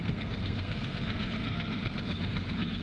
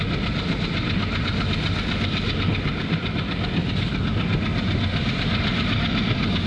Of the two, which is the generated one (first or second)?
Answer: first